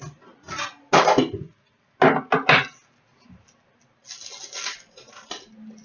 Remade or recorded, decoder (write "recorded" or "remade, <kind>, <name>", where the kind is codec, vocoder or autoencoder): recorded